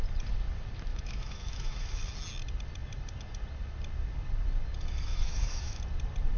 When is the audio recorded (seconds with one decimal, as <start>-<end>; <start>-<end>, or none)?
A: 0.0-0.9; 2.0-5.1; 5.8-6.4

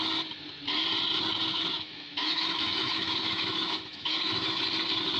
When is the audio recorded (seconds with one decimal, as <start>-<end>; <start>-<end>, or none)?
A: 0.0-1.5; 4.6-5.2

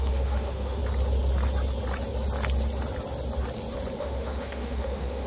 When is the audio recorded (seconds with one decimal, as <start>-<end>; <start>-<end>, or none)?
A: 0.8-4.0

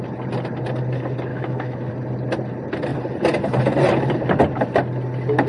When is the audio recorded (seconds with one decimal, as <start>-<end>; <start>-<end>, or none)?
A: 0.0-1.3; 1.9-5.5